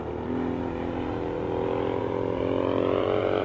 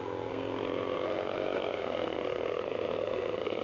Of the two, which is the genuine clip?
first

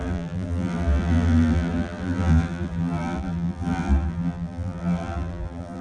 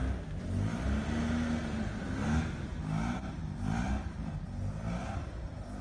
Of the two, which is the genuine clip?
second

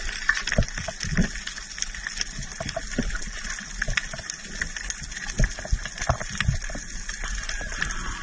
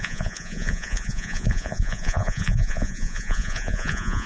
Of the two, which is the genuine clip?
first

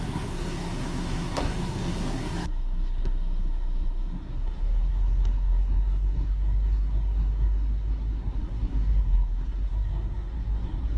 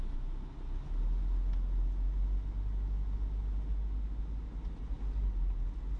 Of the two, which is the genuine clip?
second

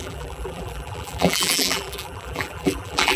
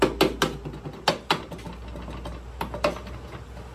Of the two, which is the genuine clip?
second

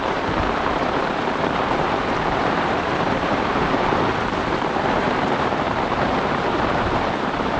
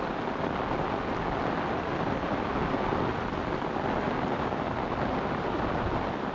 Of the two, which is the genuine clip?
second